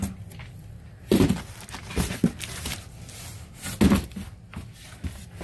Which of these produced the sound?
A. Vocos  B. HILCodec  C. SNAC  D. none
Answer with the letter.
D